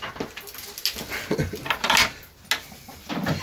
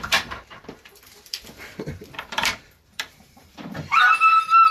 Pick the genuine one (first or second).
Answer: first